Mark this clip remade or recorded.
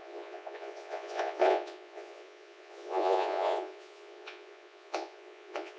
remade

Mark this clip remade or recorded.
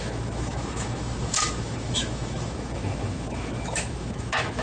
remade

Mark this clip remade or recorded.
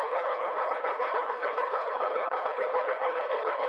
remade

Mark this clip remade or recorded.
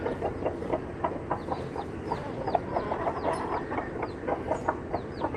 recorded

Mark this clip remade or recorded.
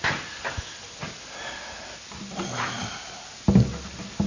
recorded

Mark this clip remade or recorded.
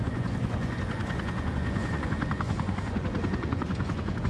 remade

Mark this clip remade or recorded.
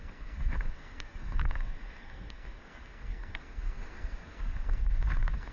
remade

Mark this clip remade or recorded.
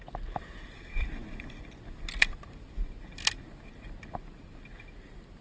recorded